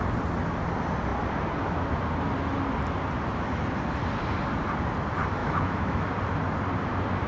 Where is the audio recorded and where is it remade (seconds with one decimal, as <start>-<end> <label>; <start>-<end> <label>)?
0.0-5.4 recorded; 5.4-6.1 remade; 6.1-7.3 recorded